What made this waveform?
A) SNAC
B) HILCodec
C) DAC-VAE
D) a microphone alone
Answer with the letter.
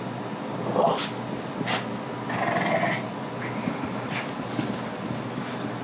D